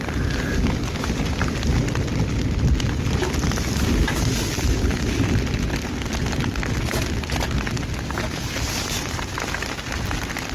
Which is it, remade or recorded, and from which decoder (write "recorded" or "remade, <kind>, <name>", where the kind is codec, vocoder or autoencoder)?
recorded